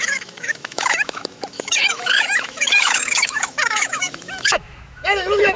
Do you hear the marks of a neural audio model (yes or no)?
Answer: yes